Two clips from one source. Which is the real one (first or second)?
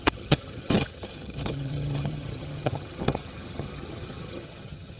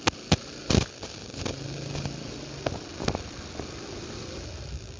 second